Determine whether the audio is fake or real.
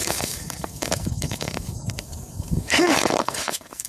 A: fake